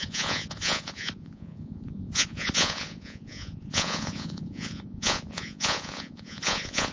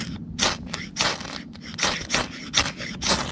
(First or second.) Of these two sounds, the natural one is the second